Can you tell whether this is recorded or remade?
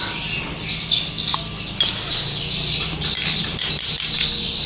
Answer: recorded